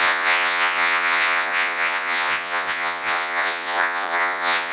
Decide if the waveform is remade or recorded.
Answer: remade